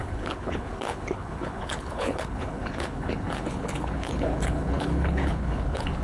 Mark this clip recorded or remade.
remade